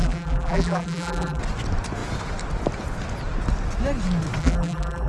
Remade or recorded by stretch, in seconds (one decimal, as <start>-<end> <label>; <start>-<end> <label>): 0.0-1.4 remade; 1.4-4.4 recorded; 4.4-5.1 remade